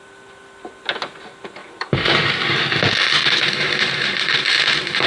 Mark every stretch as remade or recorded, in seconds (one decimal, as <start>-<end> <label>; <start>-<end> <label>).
0.0-1.6 recorded; 1.6-2.3 remade; 2.3-3.2 recorded; 3.2-5.1 remade